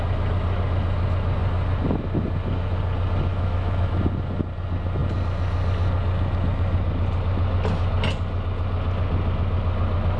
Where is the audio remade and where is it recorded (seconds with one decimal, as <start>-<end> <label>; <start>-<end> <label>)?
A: 0.0-3.3 recorded; 3.3-4.0 remade; 4.0-10.2 recorded